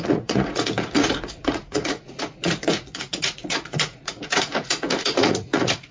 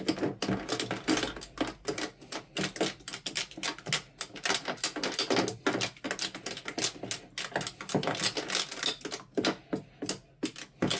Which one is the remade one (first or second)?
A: first